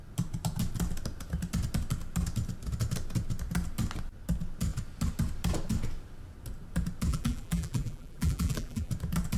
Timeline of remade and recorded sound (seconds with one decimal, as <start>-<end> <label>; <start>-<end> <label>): 0.0-7.1 recorded; 7.1-8.9 remade; 8.9-9.4 recorded